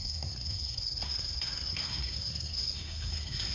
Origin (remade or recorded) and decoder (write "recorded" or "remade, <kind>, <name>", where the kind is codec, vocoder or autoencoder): remade, codec, SNAC